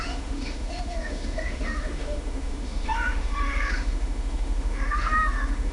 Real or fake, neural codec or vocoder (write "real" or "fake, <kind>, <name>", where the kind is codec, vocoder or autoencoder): fake, autoencoder, DAC-VAE